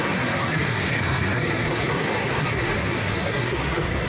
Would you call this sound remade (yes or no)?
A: yes